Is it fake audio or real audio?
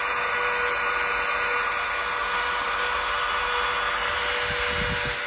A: real